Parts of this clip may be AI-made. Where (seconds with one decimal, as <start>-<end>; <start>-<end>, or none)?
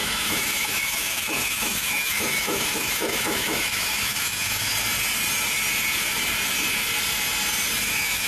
0.0-4.7; 7.9-8.3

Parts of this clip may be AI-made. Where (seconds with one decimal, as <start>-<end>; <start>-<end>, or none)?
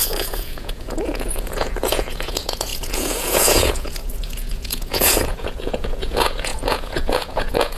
0.0-7.8